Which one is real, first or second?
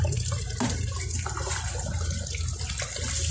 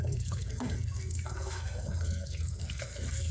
first